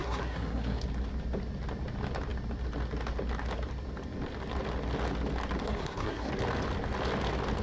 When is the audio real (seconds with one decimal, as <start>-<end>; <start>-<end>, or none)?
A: 0.8-5.6; 6.3-7.6